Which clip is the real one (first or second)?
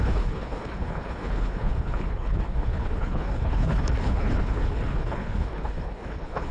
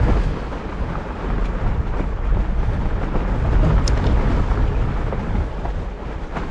second